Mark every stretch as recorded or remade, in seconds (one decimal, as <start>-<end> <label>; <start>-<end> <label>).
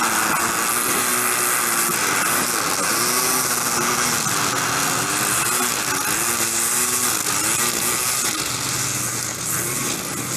0.0-10.4 recorded